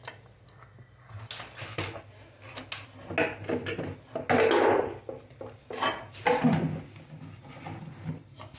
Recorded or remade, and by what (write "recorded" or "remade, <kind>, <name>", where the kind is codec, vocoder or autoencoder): recorded